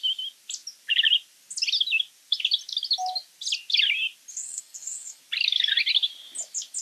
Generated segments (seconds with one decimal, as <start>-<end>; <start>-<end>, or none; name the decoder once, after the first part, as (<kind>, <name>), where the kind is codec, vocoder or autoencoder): 4.3-5.2 (codec, SNAC)

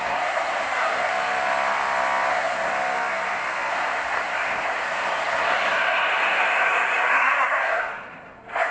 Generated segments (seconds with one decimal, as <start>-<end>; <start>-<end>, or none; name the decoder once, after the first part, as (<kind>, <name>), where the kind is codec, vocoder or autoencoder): 0.0-1.1 (codec, SNAC); 2.3-2.7; 3.7-8.7

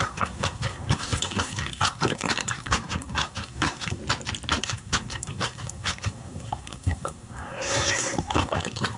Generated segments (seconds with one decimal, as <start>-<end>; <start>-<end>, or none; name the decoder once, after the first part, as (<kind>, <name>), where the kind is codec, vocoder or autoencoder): 0.0-4.0 (codec, SNAC); 4.6-9.0